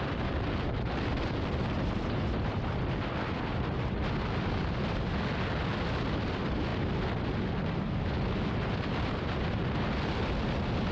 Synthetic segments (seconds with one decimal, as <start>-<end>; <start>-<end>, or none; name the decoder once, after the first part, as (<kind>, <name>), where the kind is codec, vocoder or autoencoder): none